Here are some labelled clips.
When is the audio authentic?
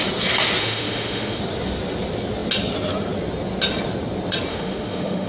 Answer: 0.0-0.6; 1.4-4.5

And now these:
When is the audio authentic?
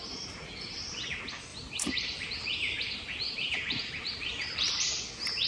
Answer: 0.0-1.5; 4.8-5.5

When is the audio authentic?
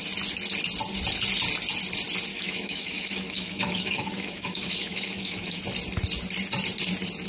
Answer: 0.0-2.3; 5.6-7.3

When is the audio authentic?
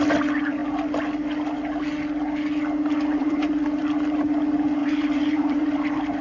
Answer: 0.0-3.2; 3.8-4.8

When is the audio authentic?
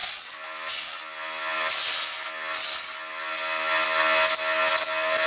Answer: 0.0-5.3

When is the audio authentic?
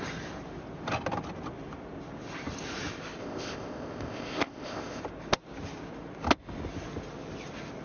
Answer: 0.0-3.2; 5.0-7.8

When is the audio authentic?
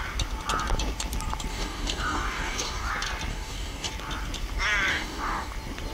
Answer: 0.0-1.5; 2.9-3.3; 3.9-4.9; 5.5-5.9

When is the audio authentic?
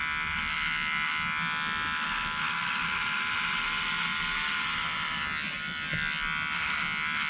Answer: 0.0-7.3